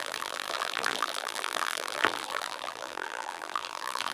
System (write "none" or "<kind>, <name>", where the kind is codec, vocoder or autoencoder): vocoder, BigVGAN v2